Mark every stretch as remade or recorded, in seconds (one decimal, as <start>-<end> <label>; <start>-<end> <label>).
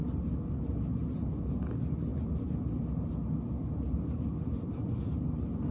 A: 0.0-5.7 recorded